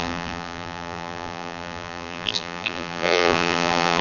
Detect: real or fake fake